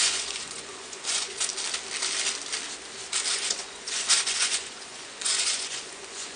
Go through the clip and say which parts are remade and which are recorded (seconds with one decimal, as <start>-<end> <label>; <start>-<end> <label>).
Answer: 0.0-1.5 remade; 1.5-3.3 recorded; 3.3-6.4 remade